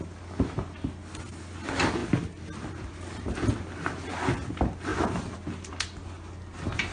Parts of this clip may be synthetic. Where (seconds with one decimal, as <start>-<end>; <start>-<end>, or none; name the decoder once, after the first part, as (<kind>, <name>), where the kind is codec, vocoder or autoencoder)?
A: none